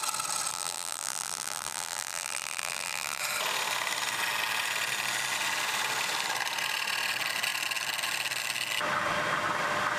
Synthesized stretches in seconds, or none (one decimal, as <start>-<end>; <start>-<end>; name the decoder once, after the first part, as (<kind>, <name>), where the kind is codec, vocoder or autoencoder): 0.5-3.2 (vocoder, BigVGAN v2)